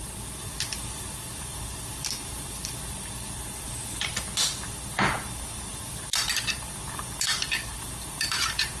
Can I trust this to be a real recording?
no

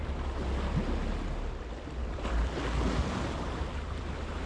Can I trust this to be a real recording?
yes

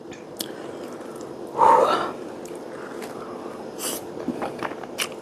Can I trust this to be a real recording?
yes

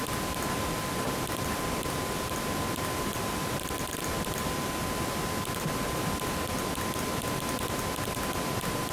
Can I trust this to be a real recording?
yes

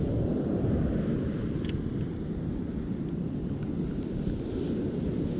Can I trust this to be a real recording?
yes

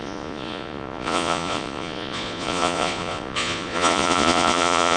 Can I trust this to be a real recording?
no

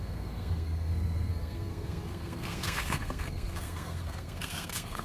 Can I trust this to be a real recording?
no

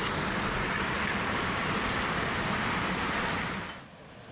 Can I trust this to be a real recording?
yes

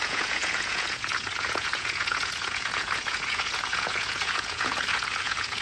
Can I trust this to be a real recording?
no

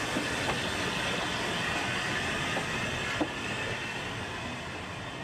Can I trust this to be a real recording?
yes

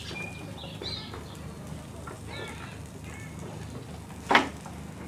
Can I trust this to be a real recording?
yes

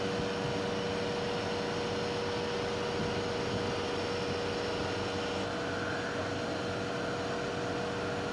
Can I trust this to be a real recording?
yes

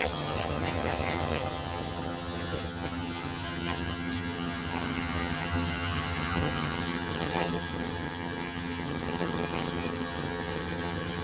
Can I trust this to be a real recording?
no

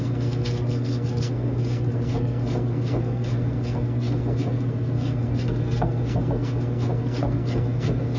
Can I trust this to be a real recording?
no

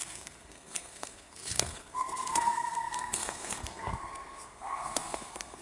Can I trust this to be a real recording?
no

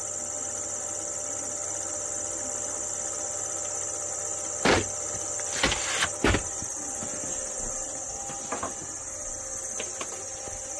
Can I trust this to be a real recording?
yes